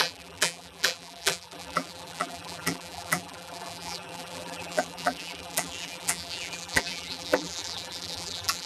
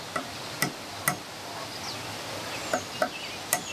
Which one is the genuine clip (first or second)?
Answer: second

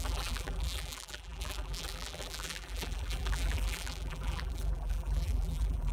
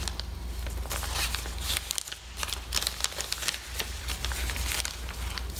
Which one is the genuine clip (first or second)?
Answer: second